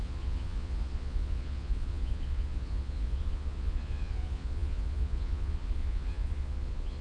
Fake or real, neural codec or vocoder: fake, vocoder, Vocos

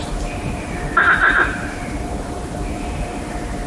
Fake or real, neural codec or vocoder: real